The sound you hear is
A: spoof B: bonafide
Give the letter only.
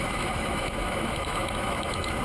A